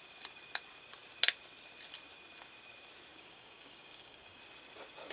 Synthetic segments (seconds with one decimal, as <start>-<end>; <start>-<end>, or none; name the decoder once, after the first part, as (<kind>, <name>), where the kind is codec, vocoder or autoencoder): 3.1-4.4 (codec, DAC)